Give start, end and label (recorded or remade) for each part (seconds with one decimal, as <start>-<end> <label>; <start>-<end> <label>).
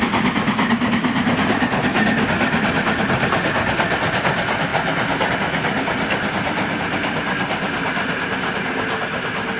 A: 0.0-9.6 recorded